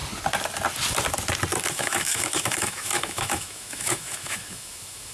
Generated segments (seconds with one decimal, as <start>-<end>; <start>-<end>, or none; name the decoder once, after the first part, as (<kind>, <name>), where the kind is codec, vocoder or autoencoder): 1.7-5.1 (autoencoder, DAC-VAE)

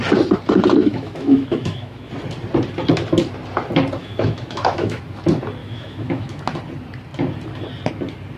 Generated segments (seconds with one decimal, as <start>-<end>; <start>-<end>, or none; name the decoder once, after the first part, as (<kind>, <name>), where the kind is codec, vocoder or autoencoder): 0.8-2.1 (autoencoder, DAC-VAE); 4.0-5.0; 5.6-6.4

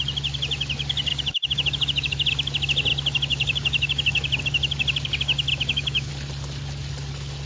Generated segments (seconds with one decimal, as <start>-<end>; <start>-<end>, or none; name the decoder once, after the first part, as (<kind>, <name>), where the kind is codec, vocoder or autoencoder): 1.1-2.3 (autoencoder, DAC-VAE); 5.5-6.1

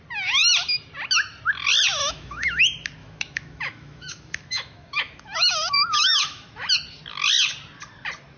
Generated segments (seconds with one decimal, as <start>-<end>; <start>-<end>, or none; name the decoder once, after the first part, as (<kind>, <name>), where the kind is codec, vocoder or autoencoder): 2.0-2.6 (autoencoder, DAC-VAE); 3.0-6.7

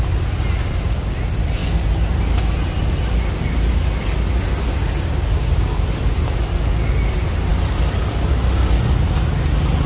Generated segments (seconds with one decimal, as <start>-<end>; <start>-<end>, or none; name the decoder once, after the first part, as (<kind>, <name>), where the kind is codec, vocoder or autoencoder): none